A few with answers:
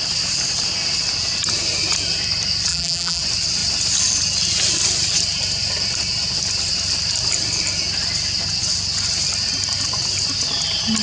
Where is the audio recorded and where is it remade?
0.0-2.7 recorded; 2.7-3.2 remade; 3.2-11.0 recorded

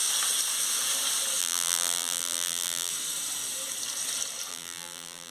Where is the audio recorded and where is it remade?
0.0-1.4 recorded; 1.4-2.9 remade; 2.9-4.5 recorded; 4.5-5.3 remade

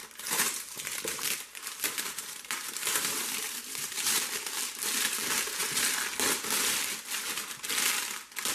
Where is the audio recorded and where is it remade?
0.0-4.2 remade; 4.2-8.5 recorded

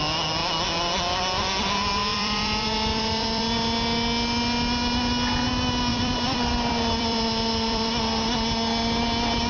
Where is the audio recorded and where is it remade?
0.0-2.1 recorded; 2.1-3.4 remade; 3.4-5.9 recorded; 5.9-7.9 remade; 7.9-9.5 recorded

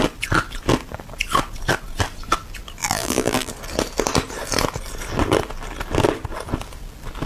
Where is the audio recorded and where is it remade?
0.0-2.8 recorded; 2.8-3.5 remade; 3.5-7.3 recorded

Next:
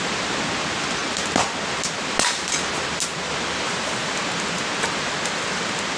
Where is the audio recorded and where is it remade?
0.0-6.0 recorded